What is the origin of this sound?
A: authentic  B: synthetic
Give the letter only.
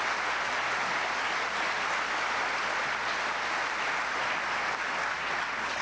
A